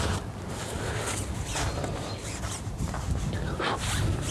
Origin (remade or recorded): recorded